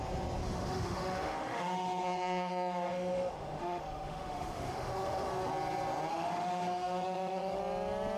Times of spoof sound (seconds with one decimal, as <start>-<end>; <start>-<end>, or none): 0.4-5.3; 6.1-7.6